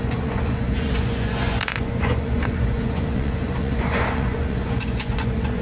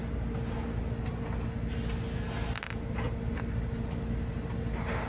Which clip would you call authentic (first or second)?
second